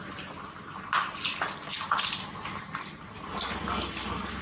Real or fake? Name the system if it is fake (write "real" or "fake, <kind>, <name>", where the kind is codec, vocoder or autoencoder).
real